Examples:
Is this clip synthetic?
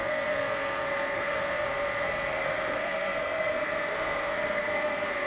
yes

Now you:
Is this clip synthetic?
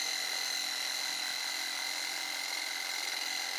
no